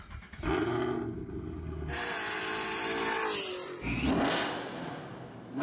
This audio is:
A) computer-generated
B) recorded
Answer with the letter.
B